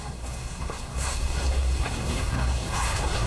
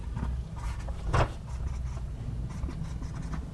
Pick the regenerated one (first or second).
first